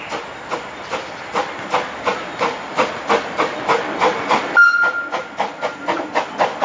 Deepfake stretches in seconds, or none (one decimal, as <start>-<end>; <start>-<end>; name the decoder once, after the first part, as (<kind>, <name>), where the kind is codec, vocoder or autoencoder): none